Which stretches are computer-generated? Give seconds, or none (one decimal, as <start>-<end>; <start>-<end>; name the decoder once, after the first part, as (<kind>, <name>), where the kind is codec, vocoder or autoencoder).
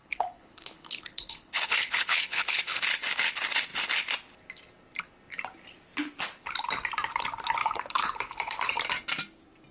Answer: 0.0-2.8 (codec, HILCodec); 7.6-8.7